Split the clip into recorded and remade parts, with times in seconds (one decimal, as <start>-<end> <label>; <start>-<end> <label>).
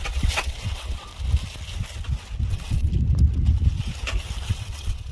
0.0-1.1 remade; 1.1-2.5 recorded; 2.5-2.9 remade; 2.9-4.5 recorded; 4.5-5.1 remade